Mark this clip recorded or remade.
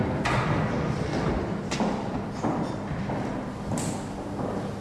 recorded